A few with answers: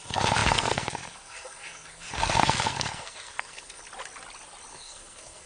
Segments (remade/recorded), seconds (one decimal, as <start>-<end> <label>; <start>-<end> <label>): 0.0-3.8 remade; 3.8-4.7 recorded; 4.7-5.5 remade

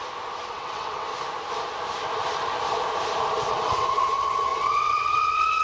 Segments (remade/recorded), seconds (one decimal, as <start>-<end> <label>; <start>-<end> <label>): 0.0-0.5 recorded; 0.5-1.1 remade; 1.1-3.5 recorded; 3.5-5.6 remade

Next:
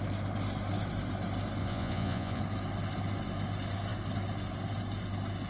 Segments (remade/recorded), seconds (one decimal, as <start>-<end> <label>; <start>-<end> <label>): 0.0-1.6 recorded; 1.6-2.4 remade; 2.4-5.5 recorded

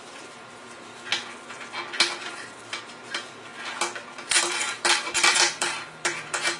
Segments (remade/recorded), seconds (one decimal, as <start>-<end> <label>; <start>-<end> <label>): 0.0-1.1 remade; 1.1-2.2 recorded; 2.2-3.5 remade; 3.5-4.4 recorded; 4.4-6.6 remade